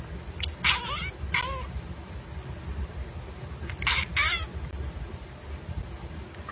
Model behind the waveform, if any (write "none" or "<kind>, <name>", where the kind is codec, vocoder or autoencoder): none